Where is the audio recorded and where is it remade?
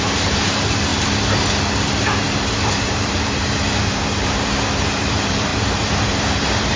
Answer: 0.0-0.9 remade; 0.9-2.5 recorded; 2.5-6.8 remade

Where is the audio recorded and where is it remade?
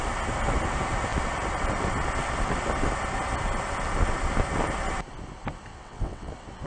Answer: 0.0-5.7 recorded; 5.7-6.3 remade; 6.3-6.7 recorded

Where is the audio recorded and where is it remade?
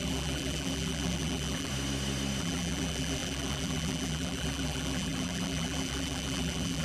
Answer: 0.0-1.7 remade; 1.7-2.4 recorded; 2.4-6.8 remade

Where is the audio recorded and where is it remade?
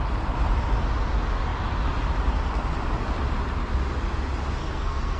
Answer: 0.0-4.6 recorded; 4.6-5.2 remade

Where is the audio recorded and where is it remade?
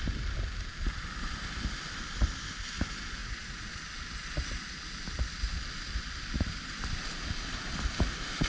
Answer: 0.0-3.2 recorded; 3.2-3.7 remade; 3.7-8.5 recorded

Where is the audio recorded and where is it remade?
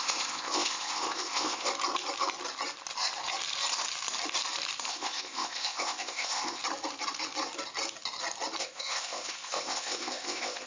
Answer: 0.0-1.7 remade; 1.7-4.9 recorded; 4.9-6.6 remade; 6.6-8.6 recorded; 8.6-10.7 remade